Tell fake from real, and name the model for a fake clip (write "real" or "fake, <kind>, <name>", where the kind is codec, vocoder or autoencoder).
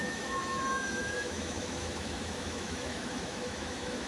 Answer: fake, autoencoder, DAC-VAE